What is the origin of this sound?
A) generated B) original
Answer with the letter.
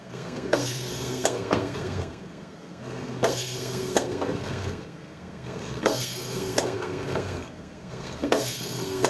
A